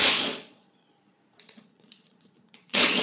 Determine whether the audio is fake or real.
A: fake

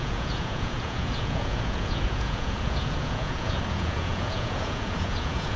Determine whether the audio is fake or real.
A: fake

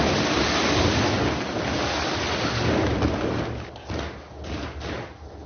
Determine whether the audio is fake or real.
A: real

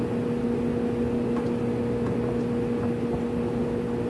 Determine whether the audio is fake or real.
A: real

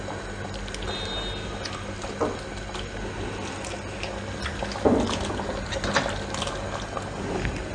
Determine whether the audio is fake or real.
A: real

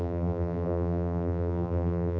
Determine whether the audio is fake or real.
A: fake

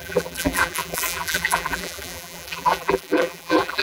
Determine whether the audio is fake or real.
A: fake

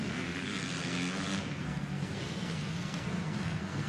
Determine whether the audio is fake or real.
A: fake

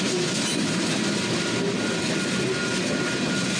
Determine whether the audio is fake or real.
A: real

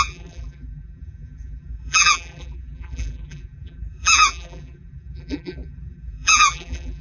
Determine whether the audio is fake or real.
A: fake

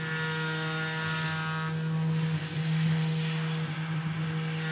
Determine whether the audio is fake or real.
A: real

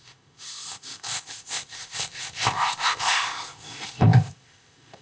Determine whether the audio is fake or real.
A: fake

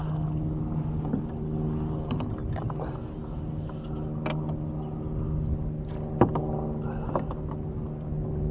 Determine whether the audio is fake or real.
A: real